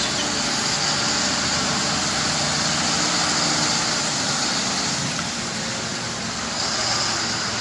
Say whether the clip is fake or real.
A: real